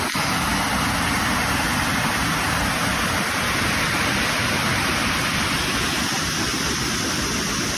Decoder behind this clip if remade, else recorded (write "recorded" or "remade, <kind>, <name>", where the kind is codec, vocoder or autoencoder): recorded